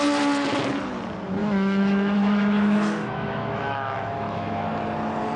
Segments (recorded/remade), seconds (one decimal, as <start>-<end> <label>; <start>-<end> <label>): 0.0-1.4 recorded; 1.4-4.6 remade; 4.6-5.4 recorded